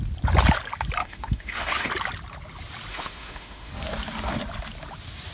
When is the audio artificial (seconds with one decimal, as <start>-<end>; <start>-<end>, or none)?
1.0-1.9; 2.9-3.7